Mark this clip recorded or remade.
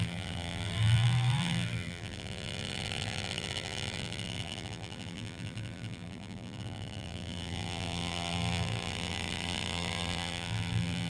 remade